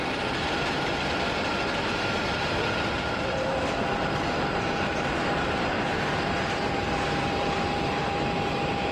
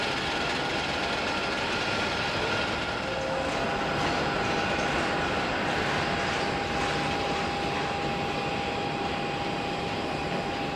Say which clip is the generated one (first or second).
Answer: first